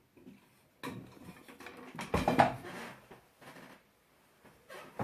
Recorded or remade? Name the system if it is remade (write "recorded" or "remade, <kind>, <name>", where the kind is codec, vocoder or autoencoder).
recorded